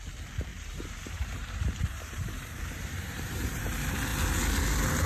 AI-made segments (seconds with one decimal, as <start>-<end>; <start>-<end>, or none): 0.5-3.6